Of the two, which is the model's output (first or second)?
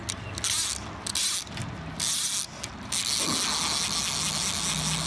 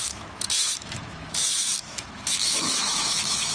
second